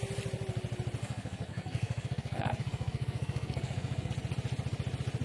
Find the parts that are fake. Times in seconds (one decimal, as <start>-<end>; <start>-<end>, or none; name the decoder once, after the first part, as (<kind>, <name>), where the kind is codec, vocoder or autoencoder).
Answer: 1.0-4.1 (codec, SNAC)